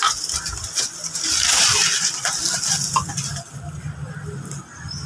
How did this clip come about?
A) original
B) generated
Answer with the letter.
A